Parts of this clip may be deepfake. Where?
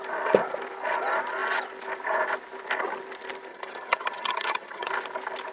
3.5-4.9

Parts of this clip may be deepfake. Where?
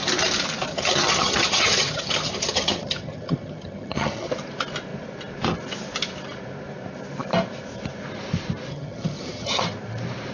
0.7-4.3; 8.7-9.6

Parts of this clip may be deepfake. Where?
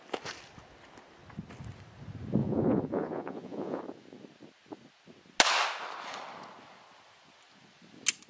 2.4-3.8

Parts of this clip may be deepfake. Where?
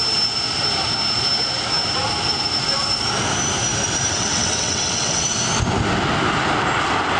4.1-5.2